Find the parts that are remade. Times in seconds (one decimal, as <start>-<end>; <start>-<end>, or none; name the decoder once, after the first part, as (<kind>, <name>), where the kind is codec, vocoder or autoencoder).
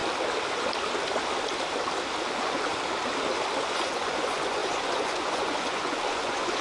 2.3-2.7 (vocoder, Vocos); 3.6-6.6